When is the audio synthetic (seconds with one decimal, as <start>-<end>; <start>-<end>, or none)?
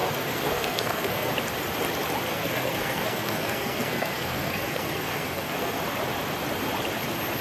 0.0-1.3; 2.3-5.8